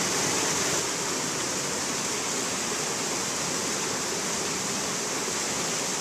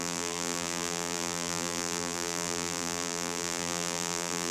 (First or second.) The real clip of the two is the first